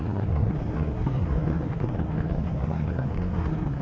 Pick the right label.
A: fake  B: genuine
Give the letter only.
A